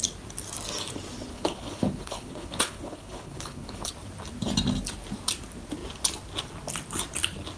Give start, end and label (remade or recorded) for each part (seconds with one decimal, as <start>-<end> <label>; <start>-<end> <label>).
0.0-1.3 recorded; 1.3-3.9 remade; 3.9-7.6 recorded